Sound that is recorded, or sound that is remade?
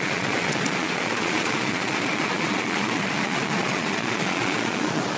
remade